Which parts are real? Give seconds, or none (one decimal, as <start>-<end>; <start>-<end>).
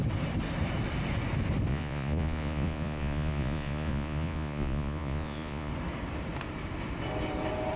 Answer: 0.0-1.7; 5.7-7.8